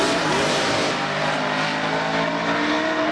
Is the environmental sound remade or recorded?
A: recorded